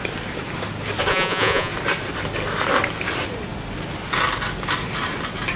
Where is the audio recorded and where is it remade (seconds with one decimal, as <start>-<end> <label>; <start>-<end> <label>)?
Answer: 0.0-1.1 recorded; 1.1-1.7 remade; 1.7-5.6 recorded